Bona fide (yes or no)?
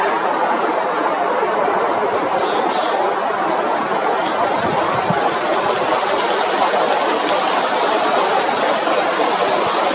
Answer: yes